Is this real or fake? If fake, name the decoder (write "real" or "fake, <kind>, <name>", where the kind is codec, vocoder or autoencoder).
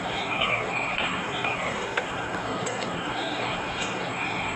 fake, codec, SNAC